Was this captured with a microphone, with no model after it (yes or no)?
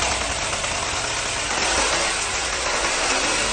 yes